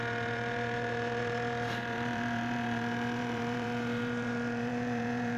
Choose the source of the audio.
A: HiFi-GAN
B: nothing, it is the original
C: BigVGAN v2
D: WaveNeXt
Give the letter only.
C